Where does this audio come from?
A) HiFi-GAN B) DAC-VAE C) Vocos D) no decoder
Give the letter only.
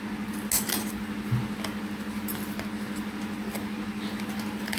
D